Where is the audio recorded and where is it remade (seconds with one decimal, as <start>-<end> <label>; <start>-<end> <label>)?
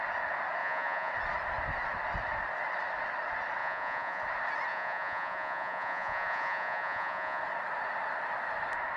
0.0-0.6 recorded; 0.6-1.1 remade; 1.1-3.6 recorded; 3.6-4.2 remade; 4.2-4.7 recorded; 4.7-7.4 remade; 7.4-9.0 recorded